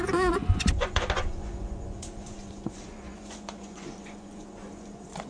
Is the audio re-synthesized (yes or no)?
yes